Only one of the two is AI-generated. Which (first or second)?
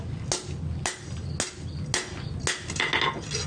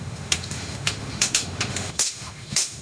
second